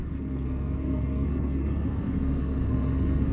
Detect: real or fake fake